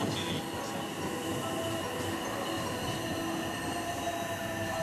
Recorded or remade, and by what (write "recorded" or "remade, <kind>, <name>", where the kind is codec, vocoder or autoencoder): recorded